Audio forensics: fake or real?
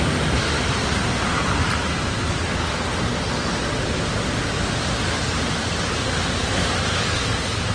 real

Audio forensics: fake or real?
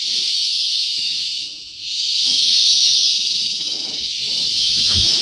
fake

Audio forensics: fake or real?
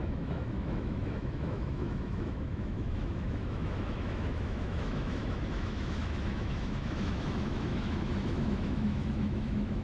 fake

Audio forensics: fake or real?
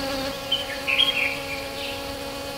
real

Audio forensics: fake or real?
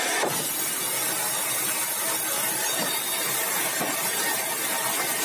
real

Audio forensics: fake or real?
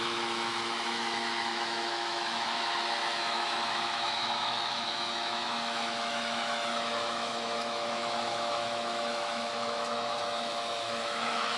fake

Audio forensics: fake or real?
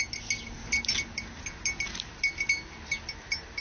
real